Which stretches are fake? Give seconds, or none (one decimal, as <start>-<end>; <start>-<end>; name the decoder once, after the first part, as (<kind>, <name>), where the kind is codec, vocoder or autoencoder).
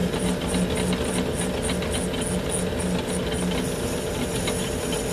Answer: none